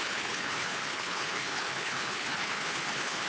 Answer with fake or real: fake